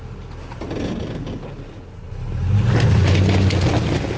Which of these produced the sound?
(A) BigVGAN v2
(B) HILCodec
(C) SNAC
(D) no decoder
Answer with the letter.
D